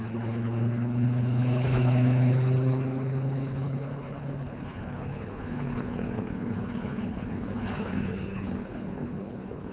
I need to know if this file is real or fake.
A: fake